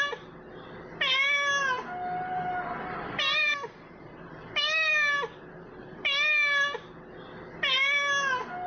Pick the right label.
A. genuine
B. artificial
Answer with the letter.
A